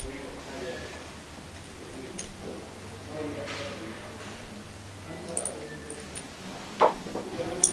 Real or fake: real